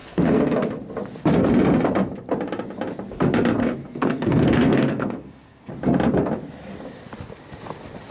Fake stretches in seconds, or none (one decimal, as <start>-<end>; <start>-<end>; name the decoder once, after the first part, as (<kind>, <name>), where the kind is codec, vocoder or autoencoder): 0.0-0.7 (codec, SNAC); 3.6-5.7